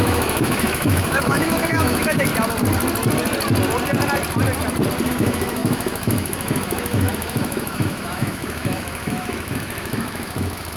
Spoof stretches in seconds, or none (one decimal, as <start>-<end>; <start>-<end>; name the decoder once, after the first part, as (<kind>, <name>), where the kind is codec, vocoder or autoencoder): 0.0-2.3 (autoencoder, DAC-VAE); 5.1-10.8